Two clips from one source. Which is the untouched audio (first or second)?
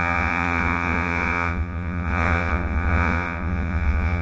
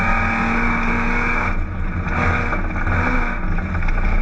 second